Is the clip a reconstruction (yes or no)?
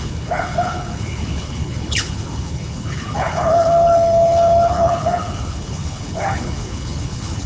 yes